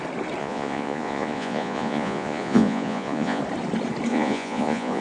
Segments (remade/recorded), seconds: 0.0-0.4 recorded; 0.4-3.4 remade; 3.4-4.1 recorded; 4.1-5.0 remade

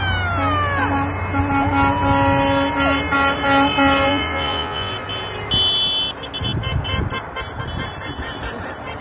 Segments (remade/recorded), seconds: 0.0-4.1 recorded; 4.1-4.9 remade; 4.9-9.0 recorded

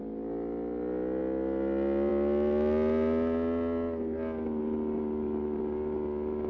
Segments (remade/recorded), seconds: 0.0-6.5 recorded

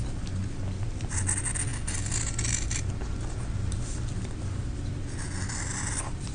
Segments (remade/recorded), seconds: 0.0-6.3 recorded

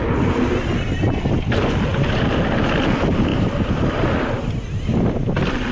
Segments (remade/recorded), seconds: 0.0-5.7 recorded